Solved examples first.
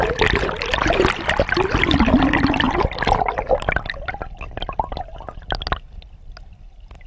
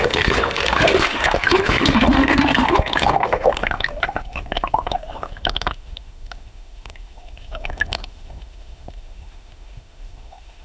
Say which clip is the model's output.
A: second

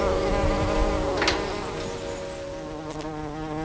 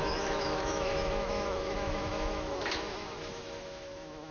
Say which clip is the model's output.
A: second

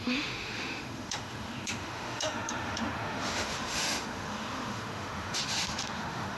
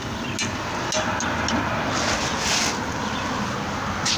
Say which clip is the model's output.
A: first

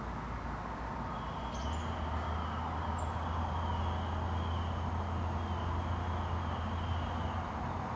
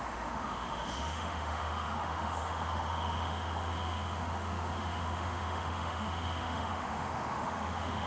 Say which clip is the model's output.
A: second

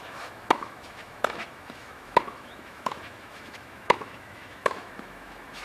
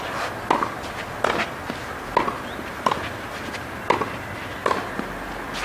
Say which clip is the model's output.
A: first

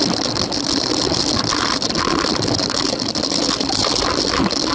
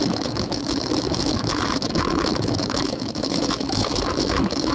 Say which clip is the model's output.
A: second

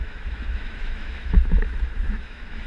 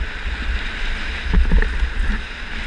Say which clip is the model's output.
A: first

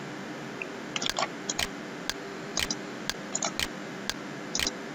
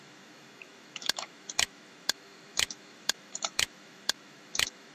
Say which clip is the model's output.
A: second